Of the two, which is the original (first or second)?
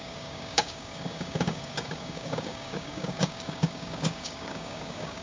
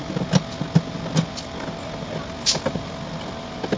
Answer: second